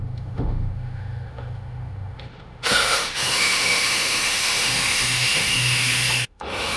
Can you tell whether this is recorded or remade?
remade